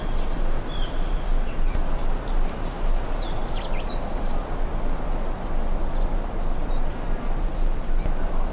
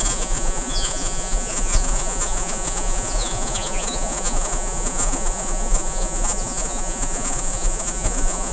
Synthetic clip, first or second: second